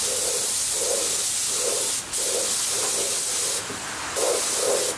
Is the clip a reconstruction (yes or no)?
no